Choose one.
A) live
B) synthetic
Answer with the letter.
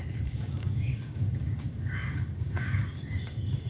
B